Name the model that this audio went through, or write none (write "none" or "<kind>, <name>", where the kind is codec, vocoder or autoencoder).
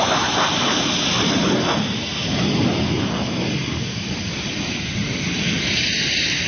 none